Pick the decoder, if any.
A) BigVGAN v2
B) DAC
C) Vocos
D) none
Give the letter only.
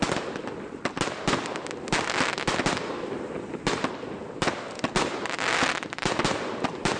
D